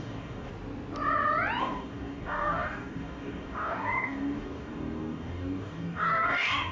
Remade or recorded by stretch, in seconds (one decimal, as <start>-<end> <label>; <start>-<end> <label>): 0.0-0.5 remade; 0.5-1.6 recorded; 1.6-6.7 remade